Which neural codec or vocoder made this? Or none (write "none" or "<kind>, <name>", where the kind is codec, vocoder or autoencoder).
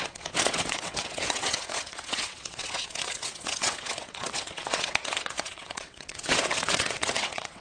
vocoder, WaveNeXt